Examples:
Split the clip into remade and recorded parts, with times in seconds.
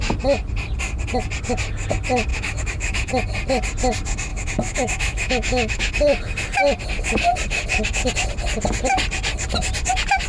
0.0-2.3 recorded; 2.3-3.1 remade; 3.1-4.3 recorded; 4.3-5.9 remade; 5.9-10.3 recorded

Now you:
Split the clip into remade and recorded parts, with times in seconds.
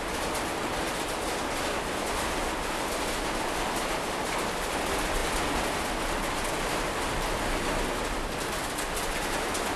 0.0-9.8 recorded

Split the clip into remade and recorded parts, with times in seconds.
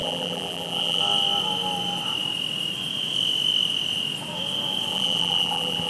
0.0-1.0 remade; 1.0-4.9 recorded; 4.9-5.9 remade